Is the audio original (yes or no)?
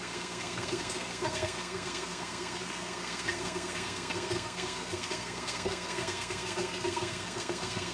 no